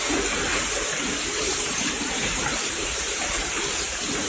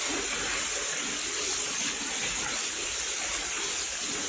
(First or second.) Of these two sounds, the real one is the second